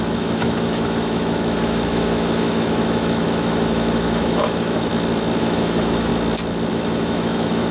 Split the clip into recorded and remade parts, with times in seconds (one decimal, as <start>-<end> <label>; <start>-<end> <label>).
0.0-4.9 remade; 4.9-5.4 recorded; 5.4-6.1 remade; 6.1-6.7 recorded; 6.7-7.7 remade